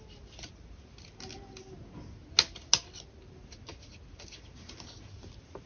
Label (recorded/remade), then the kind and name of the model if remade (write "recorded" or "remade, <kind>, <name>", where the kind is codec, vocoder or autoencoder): recorded